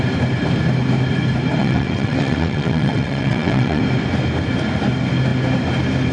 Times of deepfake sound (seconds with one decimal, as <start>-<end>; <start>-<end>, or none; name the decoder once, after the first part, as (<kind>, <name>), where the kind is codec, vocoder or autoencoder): 1.6-3.8 (vocoder, WaveNeXt)